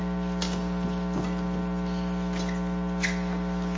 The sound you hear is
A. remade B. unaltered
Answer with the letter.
B